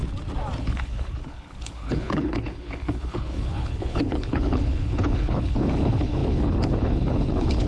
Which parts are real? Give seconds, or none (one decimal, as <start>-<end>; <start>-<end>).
0.0-0.6